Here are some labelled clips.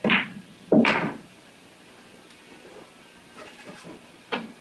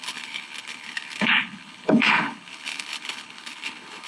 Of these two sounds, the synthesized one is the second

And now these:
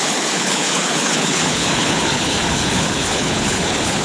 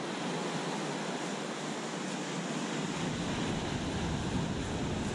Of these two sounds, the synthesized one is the first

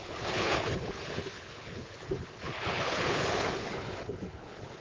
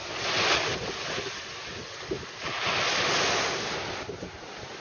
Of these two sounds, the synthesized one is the first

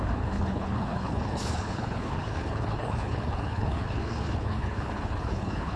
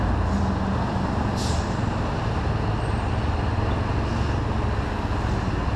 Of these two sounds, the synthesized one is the first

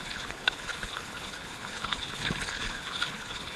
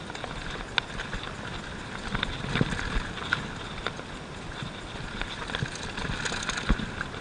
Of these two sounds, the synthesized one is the first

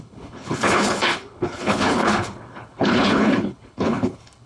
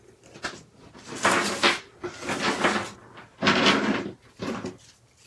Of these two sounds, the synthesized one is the first